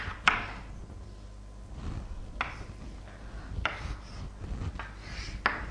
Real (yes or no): yes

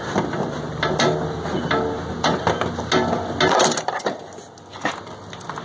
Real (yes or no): yes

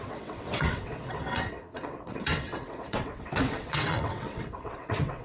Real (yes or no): no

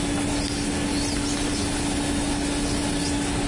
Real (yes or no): yes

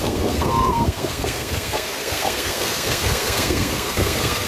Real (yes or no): no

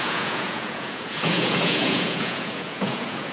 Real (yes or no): no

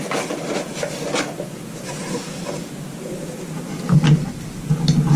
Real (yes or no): yes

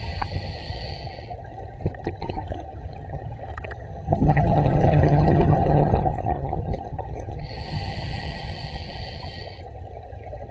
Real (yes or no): no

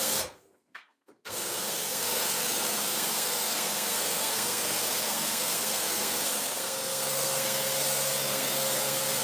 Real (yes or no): no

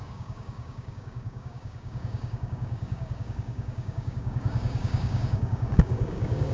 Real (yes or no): no